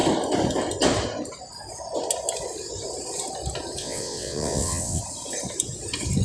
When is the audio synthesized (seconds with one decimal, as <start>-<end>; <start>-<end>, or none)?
3.8-5.0